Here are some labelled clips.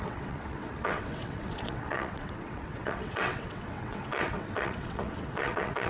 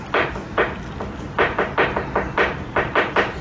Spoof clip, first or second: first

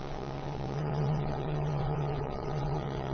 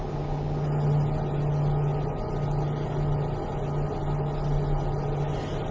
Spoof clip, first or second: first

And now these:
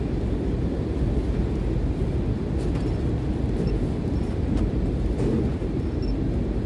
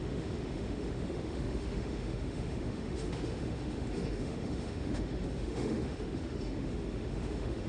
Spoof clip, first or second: second